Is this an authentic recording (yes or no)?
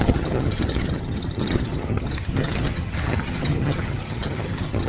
no